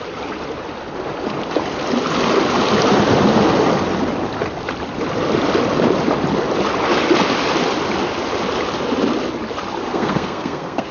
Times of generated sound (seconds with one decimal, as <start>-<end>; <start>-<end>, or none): 9.9-10.9